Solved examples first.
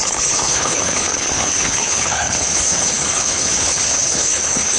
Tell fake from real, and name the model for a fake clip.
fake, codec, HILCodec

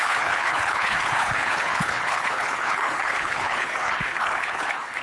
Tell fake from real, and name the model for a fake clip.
fake, codec, HILCodec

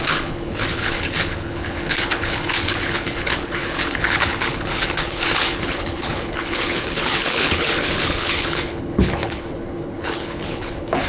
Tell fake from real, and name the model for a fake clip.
fake, codec, HILCodec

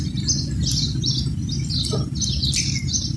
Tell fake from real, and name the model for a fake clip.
real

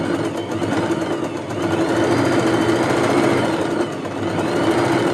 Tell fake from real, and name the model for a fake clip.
real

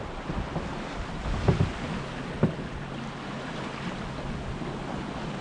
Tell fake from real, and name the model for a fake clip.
real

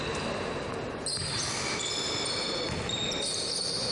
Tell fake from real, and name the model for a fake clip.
real